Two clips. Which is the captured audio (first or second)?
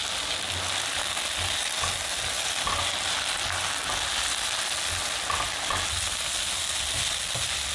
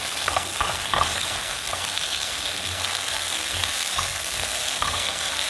first